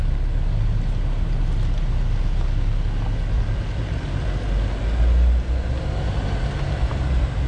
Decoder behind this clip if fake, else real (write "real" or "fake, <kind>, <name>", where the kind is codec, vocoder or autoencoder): real